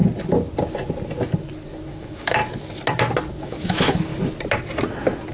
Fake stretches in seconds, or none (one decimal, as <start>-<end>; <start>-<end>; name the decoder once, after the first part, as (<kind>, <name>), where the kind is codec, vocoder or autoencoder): 1.9-2.4 (autoencoder, DAC-VAE); 3.4-4.1